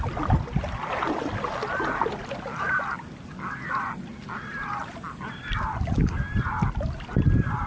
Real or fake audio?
real